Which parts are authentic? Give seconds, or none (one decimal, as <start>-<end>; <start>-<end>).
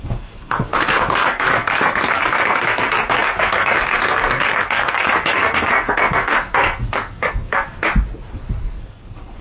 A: 7.9-8.6